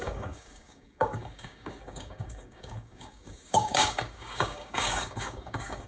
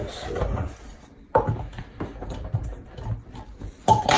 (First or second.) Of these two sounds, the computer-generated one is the first